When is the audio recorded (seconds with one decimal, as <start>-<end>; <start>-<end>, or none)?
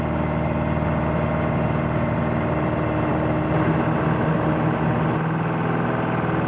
0.0-6.5